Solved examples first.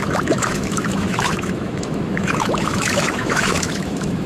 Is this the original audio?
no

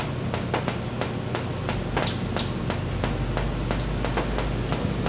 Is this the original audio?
yes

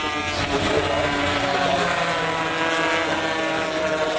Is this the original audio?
yes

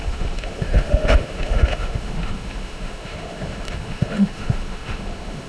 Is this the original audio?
no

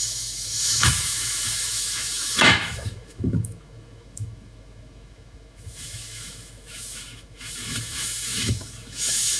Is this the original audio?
no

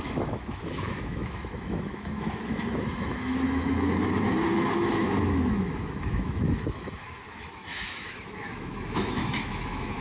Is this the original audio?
no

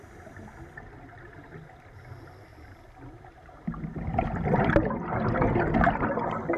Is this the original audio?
yes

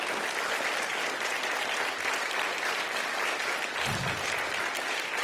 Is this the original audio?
yes